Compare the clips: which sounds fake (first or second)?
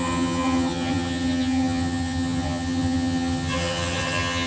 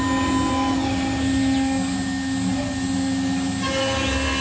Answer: first